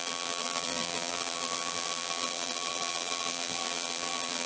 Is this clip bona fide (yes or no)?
no